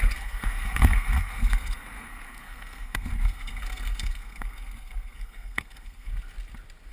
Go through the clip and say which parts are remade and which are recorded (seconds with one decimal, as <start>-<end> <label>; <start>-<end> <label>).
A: 0.0-6.1 remade; 6.1-6.9 recorded